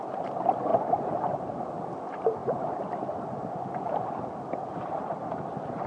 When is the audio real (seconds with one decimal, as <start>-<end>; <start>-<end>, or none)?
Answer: 0.0-5.9